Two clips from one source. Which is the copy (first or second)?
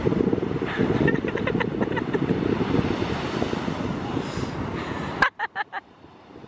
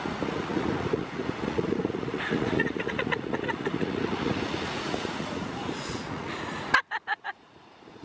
second